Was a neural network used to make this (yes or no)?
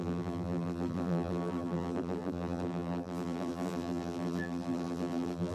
yes